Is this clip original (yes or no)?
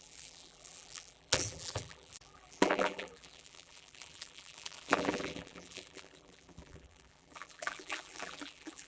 no